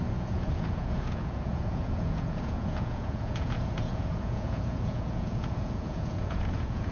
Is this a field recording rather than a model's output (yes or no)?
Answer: no